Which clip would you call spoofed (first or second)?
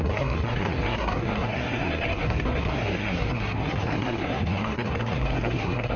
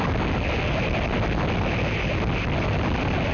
first